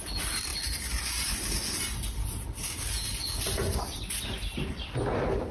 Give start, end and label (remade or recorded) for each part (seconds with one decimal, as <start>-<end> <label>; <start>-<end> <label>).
0.0-5.5 recorded